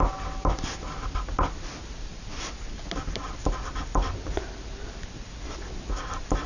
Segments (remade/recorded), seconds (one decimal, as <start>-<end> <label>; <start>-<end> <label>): 0.0-6.5 recorded